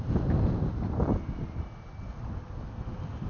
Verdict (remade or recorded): recorded